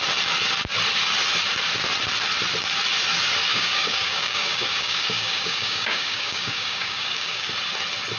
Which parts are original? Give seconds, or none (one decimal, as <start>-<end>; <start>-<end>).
0.0-3.5; 7.5-8.2